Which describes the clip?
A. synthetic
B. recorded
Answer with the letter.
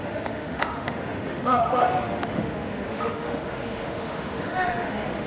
A